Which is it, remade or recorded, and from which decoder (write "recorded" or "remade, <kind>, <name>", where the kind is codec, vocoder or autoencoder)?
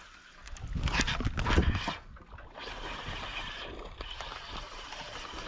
recorded